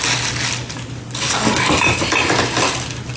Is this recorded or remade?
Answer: recorded